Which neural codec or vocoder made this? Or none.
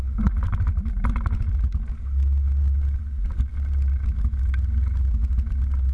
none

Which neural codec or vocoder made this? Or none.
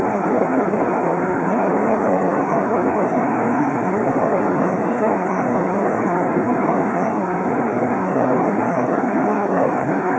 codec, SNAC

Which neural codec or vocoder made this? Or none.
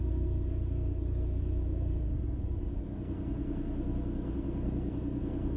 codec, SNAC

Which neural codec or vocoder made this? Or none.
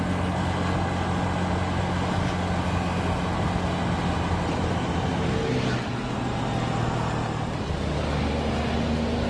none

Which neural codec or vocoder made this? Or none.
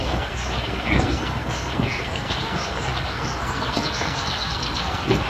codec, SNAC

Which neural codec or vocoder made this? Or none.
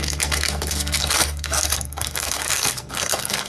codec, SNAC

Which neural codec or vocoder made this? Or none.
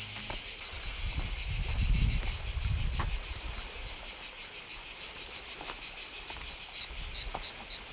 none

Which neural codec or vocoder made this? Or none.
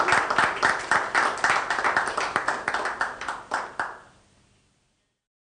none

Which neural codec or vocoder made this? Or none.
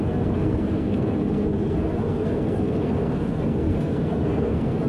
codec, SNAC